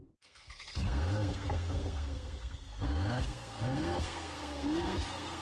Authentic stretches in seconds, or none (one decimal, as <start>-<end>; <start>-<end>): none